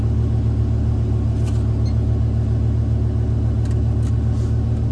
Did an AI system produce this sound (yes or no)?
no